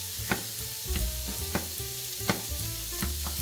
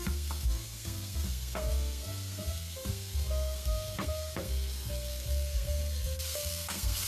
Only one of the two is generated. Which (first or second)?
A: second